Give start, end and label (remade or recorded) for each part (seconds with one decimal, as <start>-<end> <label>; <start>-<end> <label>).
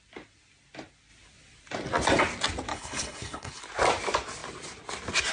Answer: 0.0-2.7 recorded; 2.7-3.6 remade; 3.6-5.3 recorded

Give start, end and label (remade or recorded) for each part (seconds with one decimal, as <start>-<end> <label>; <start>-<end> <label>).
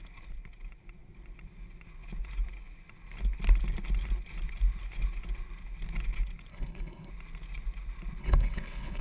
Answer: 0.0-6.5 recorded; 6.5-7.1 remade; 7.1-8.2 recorded; 8.2-9.0 remade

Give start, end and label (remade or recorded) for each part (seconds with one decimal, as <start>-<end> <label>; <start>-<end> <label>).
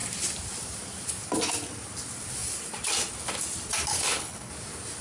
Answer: 0.0-3.9 recorded; 3.9-4.5 remade; 4.5-5.0 recorded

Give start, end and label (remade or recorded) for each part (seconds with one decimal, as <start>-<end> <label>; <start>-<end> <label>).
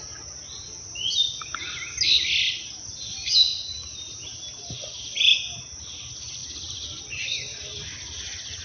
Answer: 0.0-8.6 recorded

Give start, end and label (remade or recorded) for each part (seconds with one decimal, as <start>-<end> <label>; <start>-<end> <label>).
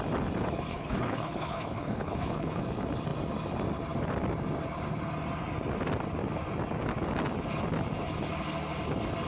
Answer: 0.0-0.7 recorded; 0.7-2.6 remade; 2.6-9.3 recorded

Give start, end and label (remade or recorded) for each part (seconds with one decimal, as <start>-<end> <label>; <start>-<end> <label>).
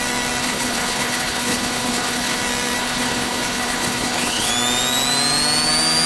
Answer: 0.0-0.4 recorded; 0.4-2.4 remade; 2.4-2.8 recorded; 2.8-4.5 remade; 4.5-6.1 recorded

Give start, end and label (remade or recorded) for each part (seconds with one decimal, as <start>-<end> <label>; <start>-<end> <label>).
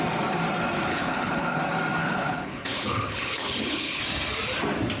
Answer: 0.0-0.9 recorded; 0.9-1.6 remade; 1.6-2.0 recorded; 2.0-4.0 remade; 4.0-5.0 recorded